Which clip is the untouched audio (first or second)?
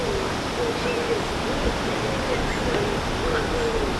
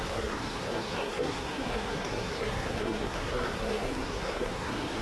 first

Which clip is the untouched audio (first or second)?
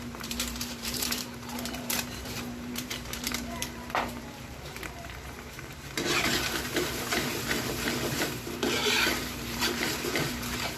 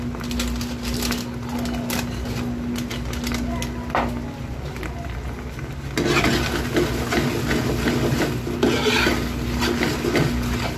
second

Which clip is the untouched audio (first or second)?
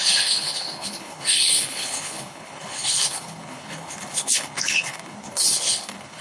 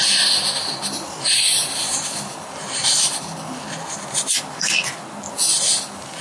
second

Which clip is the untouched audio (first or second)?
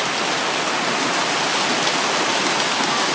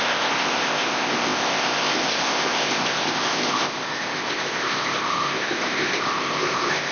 first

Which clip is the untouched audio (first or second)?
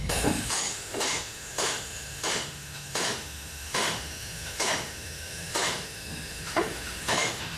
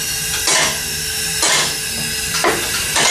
second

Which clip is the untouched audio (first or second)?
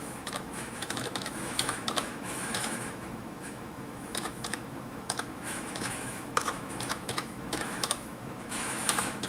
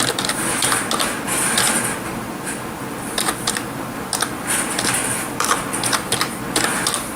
second